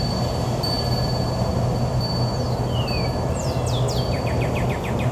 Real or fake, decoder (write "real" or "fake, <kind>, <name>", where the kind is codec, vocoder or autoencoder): real